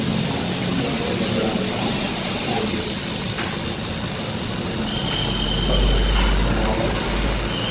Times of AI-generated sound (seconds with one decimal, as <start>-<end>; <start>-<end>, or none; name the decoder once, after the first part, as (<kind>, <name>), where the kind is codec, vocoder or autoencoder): none